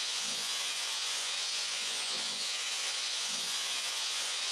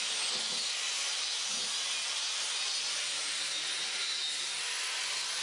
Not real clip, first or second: first